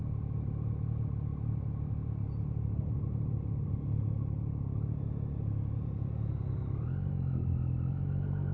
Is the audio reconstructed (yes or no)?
no